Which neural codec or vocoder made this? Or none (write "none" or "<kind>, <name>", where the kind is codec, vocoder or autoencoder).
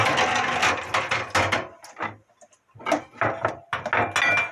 none